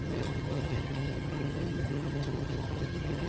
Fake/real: fake